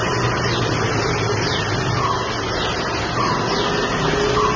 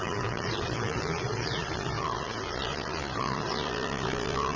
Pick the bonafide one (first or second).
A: first